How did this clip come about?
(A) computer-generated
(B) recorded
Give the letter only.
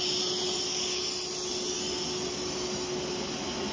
B